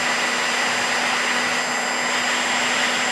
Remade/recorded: recorded